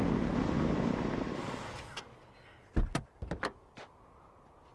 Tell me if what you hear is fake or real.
real